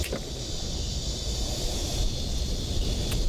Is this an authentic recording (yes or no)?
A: yes